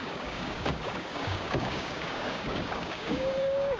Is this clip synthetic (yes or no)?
yes